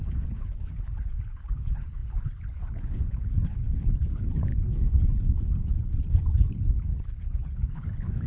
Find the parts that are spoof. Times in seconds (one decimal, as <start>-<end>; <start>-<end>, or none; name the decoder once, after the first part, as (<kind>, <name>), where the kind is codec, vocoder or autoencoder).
0.0-8.3 (codec, HILCodec)